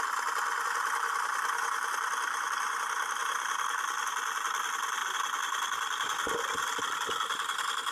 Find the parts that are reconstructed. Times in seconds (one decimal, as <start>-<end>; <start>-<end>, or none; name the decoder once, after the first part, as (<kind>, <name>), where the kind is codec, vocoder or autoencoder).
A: none